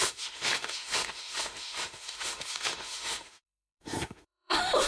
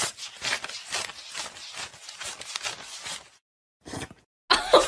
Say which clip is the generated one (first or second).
first